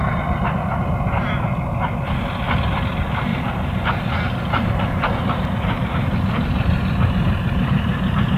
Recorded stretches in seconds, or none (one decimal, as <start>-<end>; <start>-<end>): 0.0-3.3